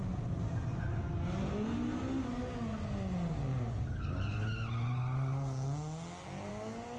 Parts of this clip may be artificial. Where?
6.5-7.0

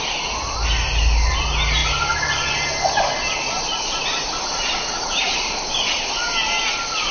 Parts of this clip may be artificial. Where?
none

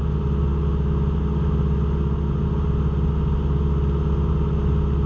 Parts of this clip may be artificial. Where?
none

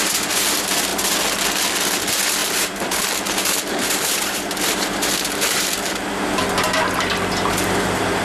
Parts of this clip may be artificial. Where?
2.4-6.0

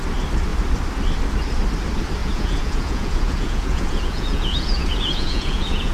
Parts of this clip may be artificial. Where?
2.2-5.9